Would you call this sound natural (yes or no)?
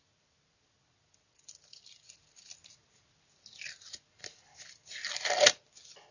yes